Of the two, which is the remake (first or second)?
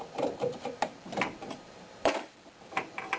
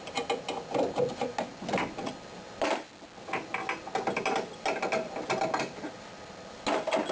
first